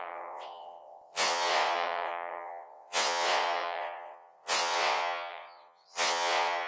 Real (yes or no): no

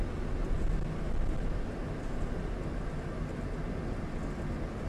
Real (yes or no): yes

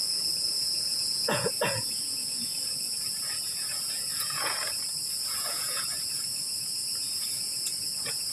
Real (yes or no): no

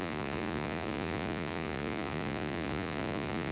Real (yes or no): no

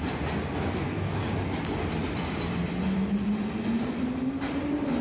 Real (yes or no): yes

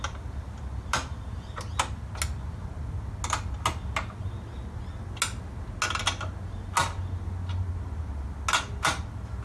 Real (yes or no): yes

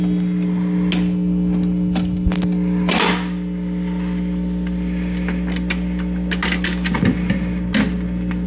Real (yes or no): yes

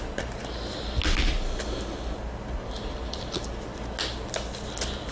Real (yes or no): yes